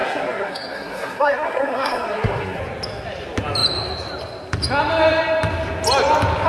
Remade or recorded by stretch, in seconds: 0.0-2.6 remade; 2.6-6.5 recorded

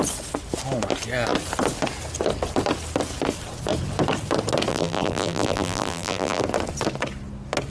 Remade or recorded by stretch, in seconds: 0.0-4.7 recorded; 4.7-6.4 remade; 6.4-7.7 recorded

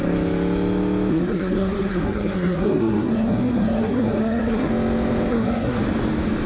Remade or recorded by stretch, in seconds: 0.0-1.1 recorded; 1.1-4.7 remade; 4.7-5.3 recorded; 5.3-5.8 remade; 5.8-6.5 recorded